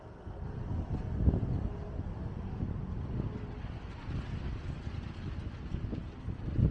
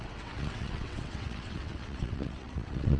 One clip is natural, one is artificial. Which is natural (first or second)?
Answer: first